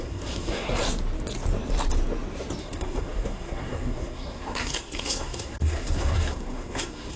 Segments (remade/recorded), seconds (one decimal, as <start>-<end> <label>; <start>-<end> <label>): 0.0-0.8 remade; 0.8-2.6 recorded; 2.6-7.2 remade